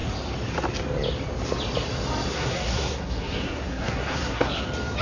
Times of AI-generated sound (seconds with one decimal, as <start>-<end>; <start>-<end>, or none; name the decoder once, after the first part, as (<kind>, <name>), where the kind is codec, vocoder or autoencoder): 2.3-4.6 (codec, SNAC)